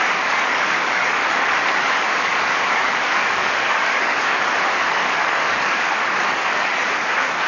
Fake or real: fake